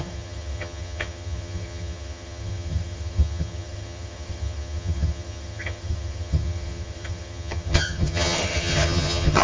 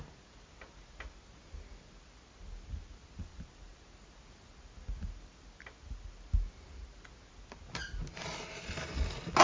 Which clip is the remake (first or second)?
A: first